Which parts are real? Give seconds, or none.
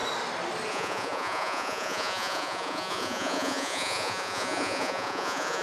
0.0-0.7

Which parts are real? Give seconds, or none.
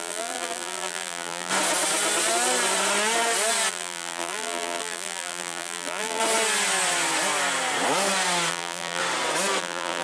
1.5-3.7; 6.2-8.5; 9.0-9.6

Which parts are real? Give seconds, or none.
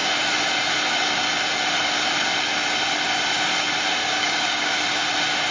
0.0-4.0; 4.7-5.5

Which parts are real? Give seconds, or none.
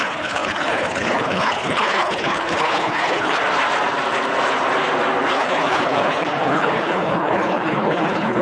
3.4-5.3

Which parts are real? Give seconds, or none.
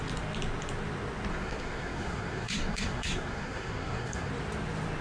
0.0-1.3; 4.3-5.0